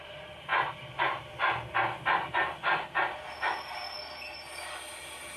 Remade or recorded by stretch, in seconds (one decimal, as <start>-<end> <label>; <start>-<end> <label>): 0.0-0.5 remade; 0.5-2.3 recorded; 2.3-5.4 remade